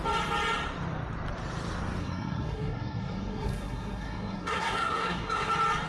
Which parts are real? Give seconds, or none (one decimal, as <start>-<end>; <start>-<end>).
0.0-2.0; 5.5-5.9